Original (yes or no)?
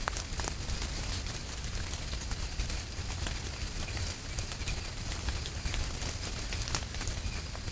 yes